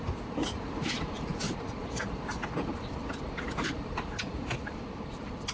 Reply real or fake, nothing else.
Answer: real